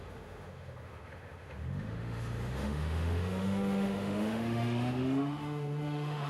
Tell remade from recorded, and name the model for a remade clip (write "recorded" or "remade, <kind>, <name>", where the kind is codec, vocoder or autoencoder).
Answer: remade, autoencoder, DAC-VAE